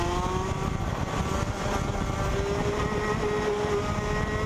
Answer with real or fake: real